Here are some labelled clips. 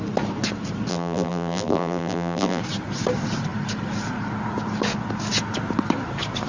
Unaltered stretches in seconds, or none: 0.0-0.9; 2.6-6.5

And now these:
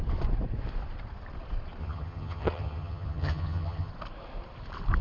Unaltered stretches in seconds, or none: 0.0-1.8; 3.9-5.0